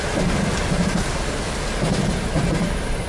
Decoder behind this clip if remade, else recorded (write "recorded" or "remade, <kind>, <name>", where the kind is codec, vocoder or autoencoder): recorded